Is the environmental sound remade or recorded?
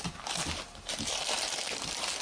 remade